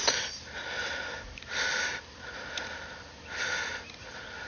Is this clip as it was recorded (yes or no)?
yes